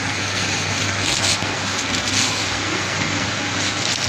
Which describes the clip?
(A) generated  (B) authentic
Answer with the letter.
A